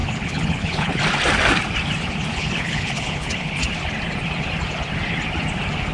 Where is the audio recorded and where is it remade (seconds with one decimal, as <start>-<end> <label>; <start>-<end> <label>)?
0.0-1.0 remade; 1.0-2.3 recorded; 2.3-3.6 remade; 3.6-5.9 recorded